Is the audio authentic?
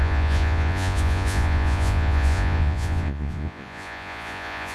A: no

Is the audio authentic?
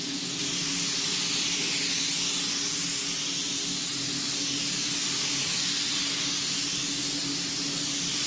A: yes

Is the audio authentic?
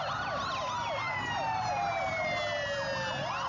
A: yes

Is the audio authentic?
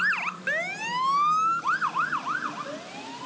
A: yes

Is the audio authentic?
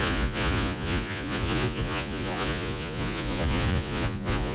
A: no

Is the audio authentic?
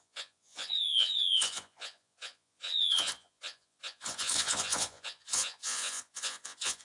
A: no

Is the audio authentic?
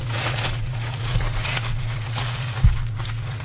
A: no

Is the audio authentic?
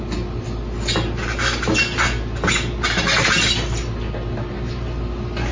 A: yes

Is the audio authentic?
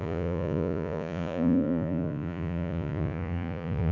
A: no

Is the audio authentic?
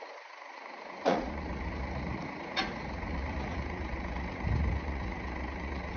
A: no